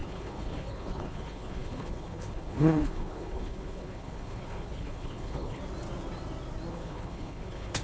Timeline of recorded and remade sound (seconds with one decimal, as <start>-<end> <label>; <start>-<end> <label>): 0.0-5.6 remade; 5.6-6.7 recorded; 6.7-7.8 remade